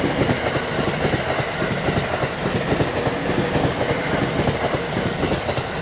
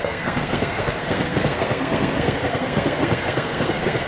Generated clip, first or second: second